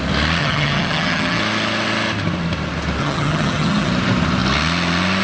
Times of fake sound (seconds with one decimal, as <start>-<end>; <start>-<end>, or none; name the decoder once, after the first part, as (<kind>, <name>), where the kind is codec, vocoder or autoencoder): 0.4-1.4 (vocoder, HiFi-GAN); 3.0-3.9

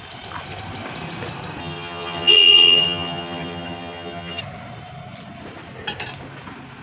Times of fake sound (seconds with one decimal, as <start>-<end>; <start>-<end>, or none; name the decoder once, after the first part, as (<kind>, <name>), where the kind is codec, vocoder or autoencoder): 1.6-4.4 (vocoder, HiFi-GAN)

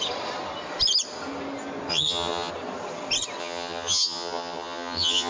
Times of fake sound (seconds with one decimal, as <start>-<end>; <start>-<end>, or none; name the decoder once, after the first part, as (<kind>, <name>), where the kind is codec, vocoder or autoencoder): 1.9-2.5 (vocoder, HiFi-GAN); 3.4-5.3

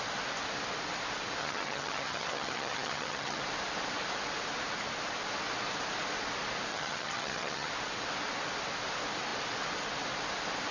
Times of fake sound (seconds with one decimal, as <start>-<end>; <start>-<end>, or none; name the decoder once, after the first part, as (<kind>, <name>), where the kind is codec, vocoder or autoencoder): 1.4-3.4 (vocoder, HiFi-GAN); 6.7-7.7

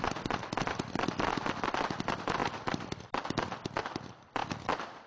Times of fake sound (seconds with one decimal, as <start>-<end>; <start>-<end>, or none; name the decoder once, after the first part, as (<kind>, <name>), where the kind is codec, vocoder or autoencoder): none

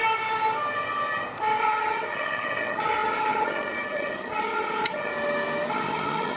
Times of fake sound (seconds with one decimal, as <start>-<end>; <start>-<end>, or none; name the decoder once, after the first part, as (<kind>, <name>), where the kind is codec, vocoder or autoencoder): 1.6-5.1 (vocoder, HiFi-GAN); 5.7-6.4

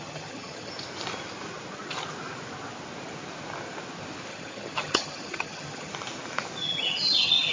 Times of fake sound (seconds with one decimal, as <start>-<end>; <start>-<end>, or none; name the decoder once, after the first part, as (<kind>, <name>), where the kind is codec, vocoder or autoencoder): 0.0-0.7 (vocoder, HiFi-GAN); 4.3-5.9; 6.6-7.5